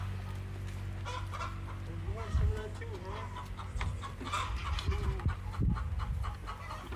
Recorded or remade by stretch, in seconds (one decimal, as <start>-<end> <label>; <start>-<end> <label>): 0.0-2.1 recorded; 2.1-2.9 remade; 2.9-7.0 recorded